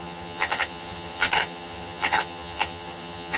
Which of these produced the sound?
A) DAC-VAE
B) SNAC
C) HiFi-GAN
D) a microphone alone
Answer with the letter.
C